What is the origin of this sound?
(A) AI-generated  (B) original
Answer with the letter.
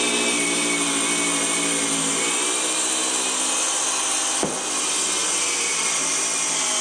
B